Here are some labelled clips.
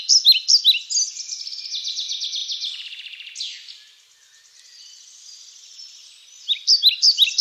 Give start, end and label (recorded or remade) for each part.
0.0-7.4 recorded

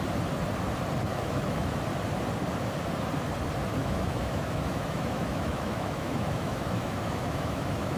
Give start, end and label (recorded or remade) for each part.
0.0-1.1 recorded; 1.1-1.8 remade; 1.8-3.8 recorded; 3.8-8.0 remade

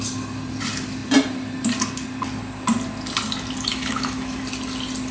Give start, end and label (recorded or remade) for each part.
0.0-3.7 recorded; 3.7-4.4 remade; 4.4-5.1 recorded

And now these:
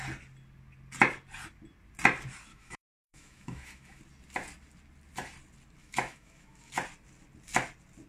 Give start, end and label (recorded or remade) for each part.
0.0-2.5 recorded; 2.5-4.0 remade; 4.0-5.8 recorded; 5.8-6.7 remade; 6.7-8.1 recorded